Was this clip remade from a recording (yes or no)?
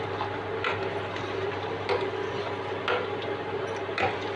no